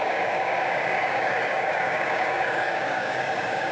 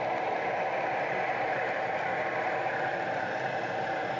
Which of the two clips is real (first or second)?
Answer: second